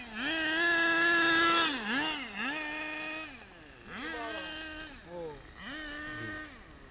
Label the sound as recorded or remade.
recorded